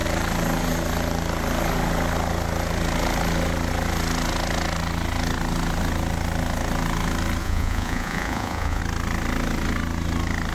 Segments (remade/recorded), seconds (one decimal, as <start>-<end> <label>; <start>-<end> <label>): 0.0-7.4 recorded; 7.4-8.8 remade; 8.8-10.5 recorded